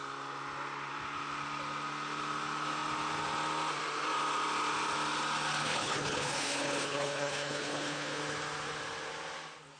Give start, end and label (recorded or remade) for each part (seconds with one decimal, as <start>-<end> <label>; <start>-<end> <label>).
0.0-5.6 recorded; 5.6-8.2 remade; 8.2-9.8 recorded